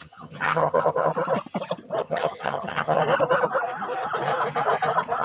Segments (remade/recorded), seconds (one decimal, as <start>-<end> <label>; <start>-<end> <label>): 0.0-1.1 remade; 1.1-2.0 recorded; 2.0-3.0 remade; 3.0-5.2 recorded